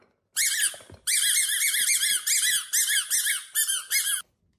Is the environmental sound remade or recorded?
recorded